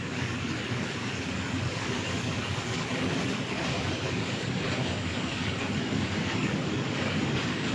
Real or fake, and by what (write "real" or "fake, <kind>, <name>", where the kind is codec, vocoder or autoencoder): fake, codec, DAC